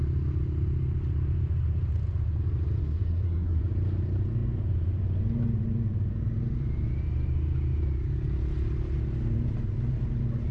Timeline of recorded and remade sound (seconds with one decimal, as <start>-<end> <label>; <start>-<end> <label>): 0.0-2.8 recorded; 2.8-3.6 remade; 3.6-10.5 recorded